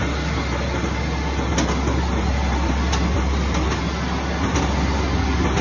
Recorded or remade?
recorded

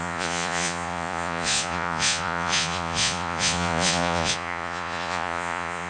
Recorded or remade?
remade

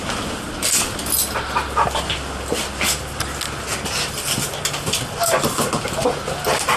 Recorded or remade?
recorded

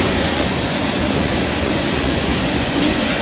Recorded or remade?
remade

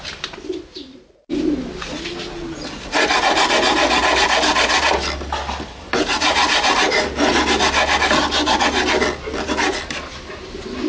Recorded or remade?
recorded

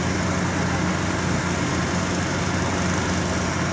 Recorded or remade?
recorded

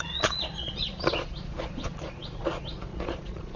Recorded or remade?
remade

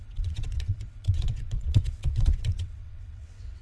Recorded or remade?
remade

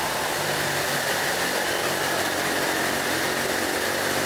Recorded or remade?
recorded